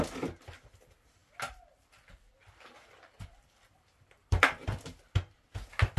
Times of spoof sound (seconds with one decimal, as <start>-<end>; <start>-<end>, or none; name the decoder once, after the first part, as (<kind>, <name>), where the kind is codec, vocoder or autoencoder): 1.2-4.8 (vocoder, BigVGAN v2)